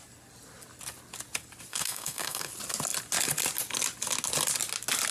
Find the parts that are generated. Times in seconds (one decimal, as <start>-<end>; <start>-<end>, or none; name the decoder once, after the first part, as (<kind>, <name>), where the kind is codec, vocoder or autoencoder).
1.7-2.5 (codec, SNAC)